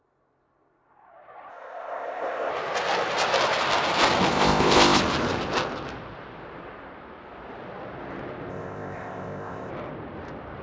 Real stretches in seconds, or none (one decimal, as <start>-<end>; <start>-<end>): 0.0-1.5; 2.5-4.3; 5.0-8.5; 9.7-10.6

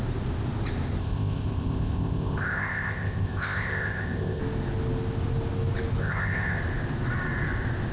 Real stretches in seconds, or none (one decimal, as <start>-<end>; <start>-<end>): 0.0-1.0; 4.4-6.0; 6.6-7.9